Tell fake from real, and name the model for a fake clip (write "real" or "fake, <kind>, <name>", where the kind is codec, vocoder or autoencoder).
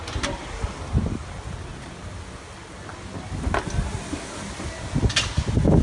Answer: real